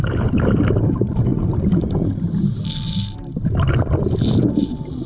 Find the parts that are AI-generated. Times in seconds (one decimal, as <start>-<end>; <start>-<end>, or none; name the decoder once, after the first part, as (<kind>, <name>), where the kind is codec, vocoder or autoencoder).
none